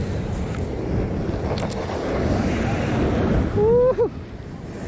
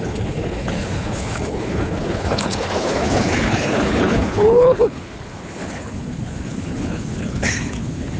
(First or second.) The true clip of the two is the first